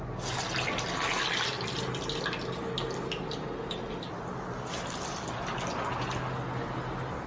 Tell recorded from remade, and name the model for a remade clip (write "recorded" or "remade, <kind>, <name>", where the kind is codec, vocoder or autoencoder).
recorded